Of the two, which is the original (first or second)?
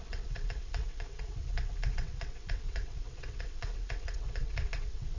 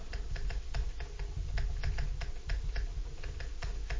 second